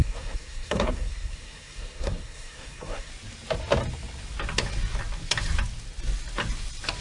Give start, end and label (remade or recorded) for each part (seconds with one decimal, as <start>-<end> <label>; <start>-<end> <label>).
0.0-3.1 remade; 3.1-7.0 recorded